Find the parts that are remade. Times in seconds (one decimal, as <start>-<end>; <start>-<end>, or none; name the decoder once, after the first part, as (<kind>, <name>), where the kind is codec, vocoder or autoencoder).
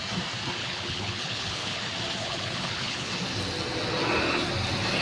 0.6-1.8 (codec, HILCodec); 2.2-3.1